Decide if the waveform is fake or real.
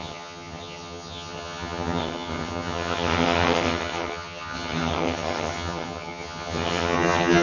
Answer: fake